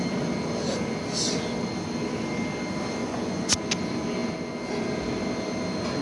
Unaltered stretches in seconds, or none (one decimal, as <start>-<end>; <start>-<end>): 0.0-3.0; 3.6-6.0